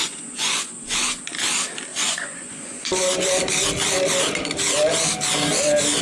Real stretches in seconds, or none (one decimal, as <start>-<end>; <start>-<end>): 1.2-1.9; 2.9-6.0

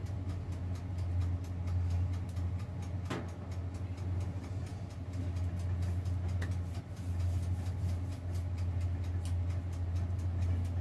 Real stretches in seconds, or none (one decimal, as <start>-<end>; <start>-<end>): 0.0-10.8

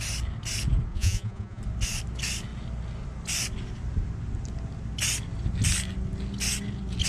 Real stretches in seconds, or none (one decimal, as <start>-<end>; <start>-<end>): 0.0-0.9; 1.6-7.1

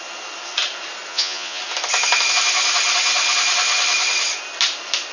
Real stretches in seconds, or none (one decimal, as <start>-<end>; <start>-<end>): 0.0-1.1; 1.6-5.1

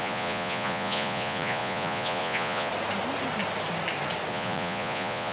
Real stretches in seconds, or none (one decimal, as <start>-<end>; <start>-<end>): 2.7-4.3

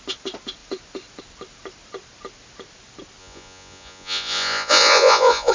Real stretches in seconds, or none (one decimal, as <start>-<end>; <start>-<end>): 0.0-3.2